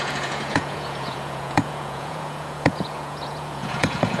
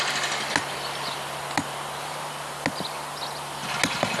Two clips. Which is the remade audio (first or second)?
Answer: first